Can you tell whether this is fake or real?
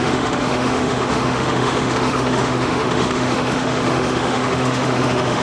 fake